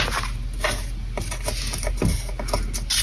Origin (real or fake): real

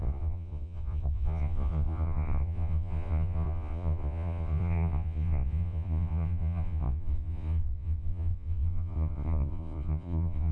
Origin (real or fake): fake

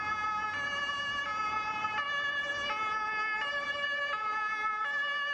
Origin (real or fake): real